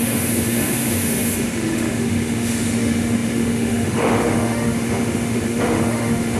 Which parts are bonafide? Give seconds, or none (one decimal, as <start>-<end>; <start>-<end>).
none